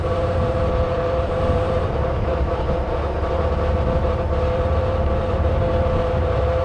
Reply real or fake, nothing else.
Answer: fake